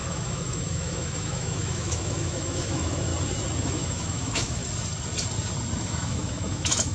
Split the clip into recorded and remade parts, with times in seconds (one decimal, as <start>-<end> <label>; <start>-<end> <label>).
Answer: 0.0-3.1 remade; 3.1-3.6 recorded; 3.6-4.6 remade; 4.6-5.8 recorded; 5.8-6.9 remade